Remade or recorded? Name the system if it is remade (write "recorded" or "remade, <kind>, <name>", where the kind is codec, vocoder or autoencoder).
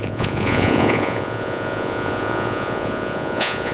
remade, vocoder, Vocos